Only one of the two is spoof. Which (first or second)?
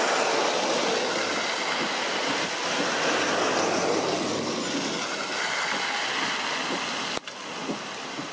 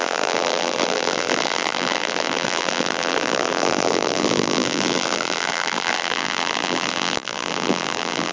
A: second